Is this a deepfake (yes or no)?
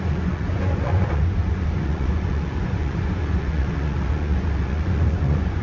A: yes